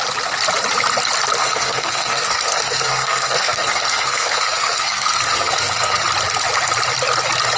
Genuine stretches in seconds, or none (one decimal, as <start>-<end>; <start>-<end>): 0.0-1.4; 6.0-7.6